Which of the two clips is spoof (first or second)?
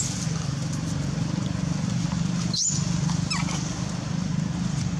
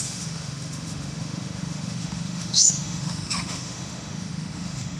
second